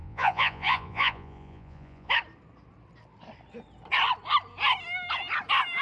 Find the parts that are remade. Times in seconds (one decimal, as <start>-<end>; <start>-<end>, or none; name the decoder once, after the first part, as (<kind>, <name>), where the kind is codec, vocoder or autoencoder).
0.0-2.1 (vocoder, Vocos)